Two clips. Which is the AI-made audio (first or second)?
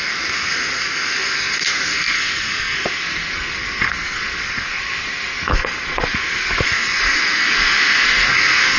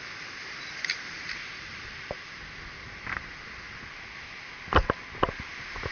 first